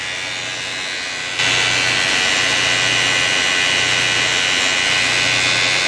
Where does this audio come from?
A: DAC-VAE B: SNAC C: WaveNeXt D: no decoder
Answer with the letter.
D